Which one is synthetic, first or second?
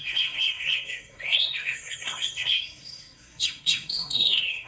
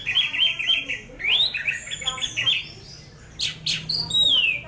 first